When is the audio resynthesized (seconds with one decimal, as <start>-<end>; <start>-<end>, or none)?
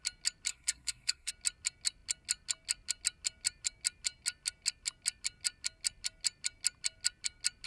0.5-1.3